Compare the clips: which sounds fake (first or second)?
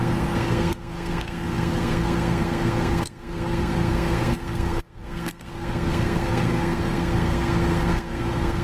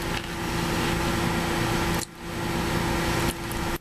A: first